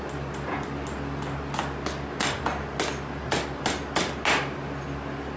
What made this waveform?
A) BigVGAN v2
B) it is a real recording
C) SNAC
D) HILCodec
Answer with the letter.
B